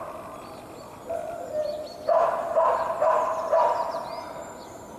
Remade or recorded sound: remade